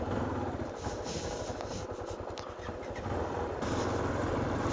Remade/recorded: recorded